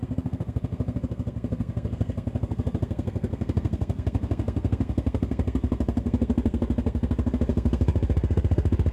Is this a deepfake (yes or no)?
yes